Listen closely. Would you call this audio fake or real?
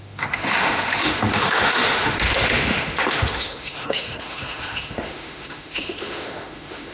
fake